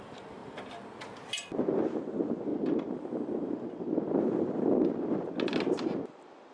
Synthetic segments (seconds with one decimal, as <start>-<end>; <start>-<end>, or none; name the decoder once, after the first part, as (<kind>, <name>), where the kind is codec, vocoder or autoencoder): none